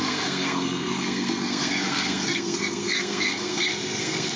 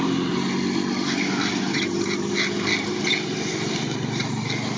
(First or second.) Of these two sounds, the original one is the second